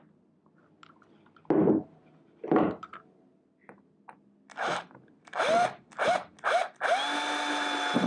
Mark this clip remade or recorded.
recorded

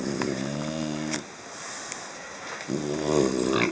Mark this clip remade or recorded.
recorded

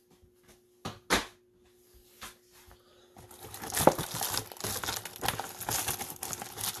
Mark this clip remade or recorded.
recorded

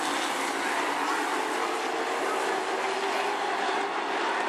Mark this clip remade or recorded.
recorded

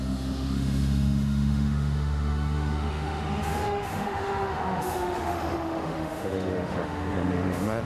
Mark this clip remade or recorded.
remade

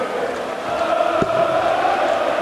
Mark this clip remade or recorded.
recorded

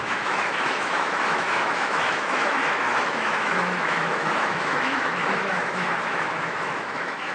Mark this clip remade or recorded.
remade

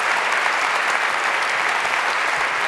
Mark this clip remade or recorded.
recorded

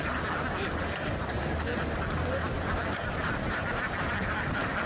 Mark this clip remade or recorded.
recorded